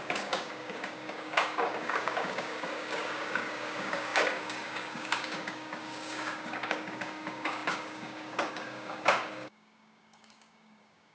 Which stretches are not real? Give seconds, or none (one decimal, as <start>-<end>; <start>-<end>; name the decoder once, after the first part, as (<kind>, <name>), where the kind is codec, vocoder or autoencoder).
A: 0.0-11.1 (codec, DAC)